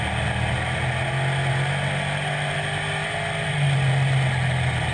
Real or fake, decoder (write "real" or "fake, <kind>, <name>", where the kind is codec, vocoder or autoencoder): real